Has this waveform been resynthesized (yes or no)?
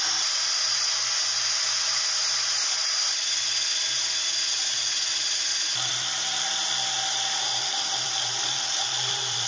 yes